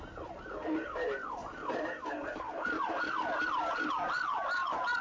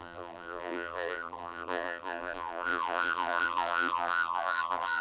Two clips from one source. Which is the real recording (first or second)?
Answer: first